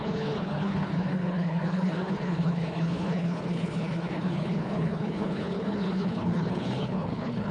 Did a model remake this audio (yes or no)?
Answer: yes